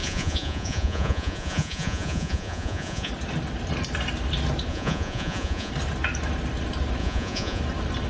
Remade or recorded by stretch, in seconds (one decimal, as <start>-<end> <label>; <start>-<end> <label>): 0.0-3.1 remade; 3.1-4.7 recorded; 4.7-5.7 remade; 5.7-7.0 recorded; 7.0-7.6 remade; 7.6-8.1 recorded

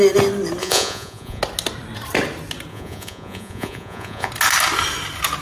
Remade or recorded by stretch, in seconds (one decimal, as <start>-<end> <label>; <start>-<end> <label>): 0.0-0.6 recorded; 0.6-1.4 remade; 1.4-2.7 recorded; 2.7-4.3 remade; 4.3-5.4 recorded

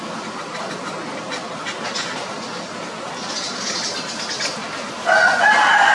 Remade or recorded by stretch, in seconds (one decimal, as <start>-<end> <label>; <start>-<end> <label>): 0.0-5.9 recorded

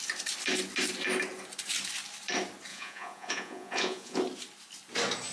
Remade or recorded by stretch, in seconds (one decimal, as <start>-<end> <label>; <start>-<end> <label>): 0.0-2.7 recorded; 2.7-4.2 remade; 4.2-5.3 recorded